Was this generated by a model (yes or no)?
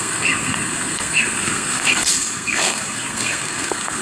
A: yes